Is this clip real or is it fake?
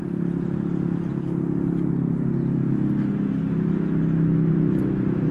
real